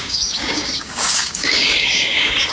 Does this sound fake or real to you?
fake